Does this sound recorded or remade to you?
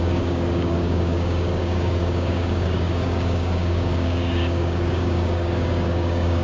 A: remade